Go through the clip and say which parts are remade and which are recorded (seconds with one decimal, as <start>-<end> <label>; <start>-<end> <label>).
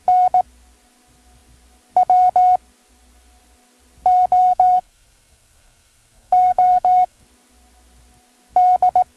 0.0-4.4 recorded; 4.4-7.2 remade; 7.2-9.2 recorded